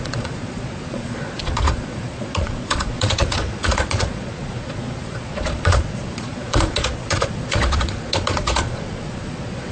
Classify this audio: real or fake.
fake